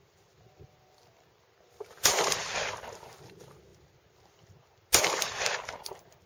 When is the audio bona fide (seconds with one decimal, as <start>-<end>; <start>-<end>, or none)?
0.0-6.3